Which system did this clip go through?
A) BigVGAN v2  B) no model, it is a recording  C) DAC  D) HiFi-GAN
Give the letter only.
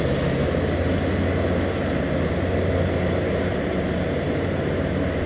B